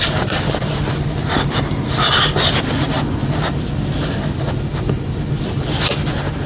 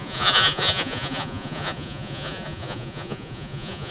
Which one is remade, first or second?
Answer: second